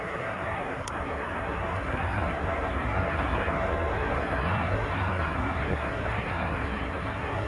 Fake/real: fake